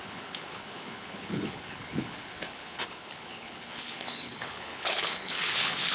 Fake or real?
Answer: fake